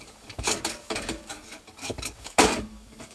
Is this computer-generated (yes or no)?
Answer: yes